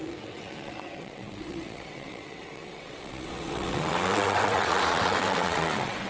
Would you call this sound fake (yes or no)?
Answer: yes